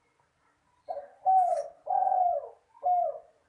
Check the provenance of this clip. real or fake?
real